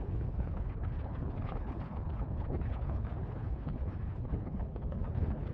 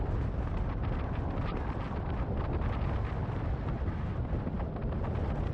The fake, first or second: first